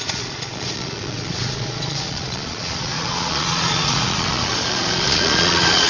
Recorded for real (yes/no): no